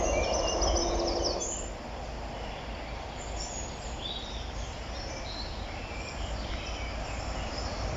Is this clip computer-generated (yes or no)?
no